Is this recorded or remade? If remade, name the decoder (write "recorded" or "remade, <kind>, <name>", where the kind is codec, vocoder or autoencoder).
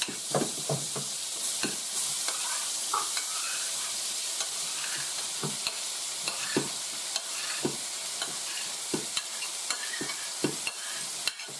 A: remade, vocoder, BigVGAN v2